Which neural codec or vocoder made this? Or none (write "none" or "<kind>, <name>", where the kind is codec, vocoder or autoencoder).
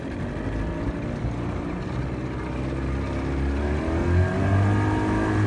none